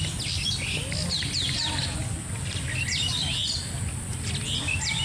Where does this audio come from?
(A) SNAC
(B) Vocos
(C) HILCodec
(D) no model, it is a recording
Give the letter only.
D